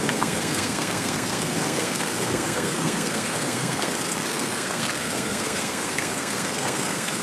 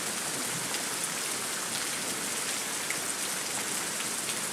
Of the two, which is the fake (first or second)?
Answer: first